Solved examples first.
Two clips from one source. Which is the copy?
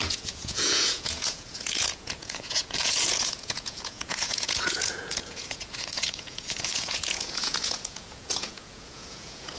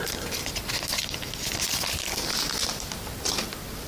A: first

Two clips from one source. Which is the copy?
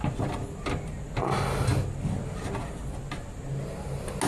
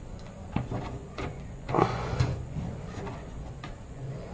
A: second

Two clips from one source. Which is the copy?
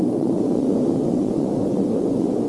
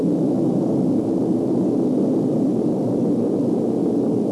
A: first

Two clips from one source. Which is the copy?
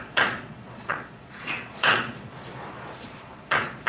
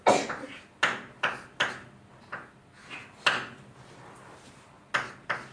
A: first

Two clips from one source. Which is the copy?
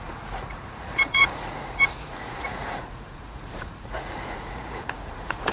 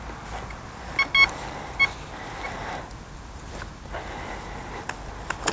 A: first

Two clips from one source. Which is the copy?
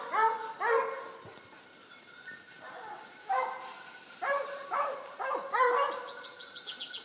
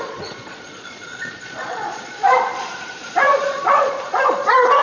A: second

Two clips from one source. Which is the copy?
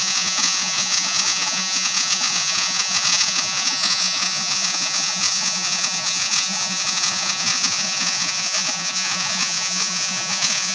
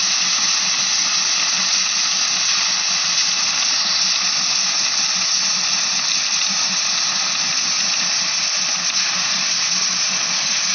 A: first